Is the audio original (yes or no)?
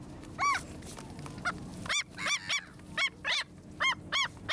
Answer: yes